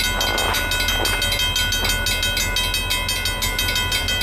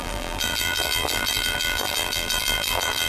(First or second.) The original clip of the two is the first